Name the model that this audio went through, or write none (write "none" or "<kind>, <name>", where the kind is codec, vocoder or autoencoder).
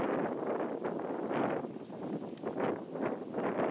none